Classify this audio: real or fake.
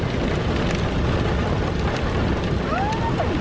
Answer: real